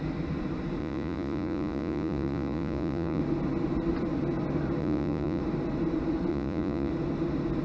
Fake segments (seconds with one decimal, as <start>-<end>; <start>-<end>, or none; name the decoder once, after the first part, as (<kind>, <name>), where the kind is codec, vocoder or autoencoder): 0.8-3.2 (vocoder, Vocos); 4.8-5.4; 6.3-6.9